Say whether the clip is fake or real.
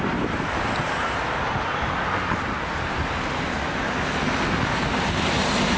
real